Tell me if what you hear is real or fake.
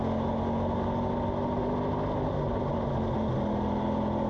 real